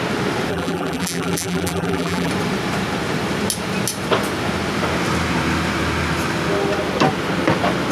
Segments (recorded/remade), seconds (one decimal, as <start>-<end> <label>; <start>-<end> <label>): 0.0-0.5 recorded; 0.5-2.3 remade; 2.3-7.9 recorded